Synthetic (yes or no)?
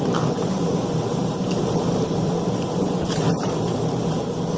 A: yes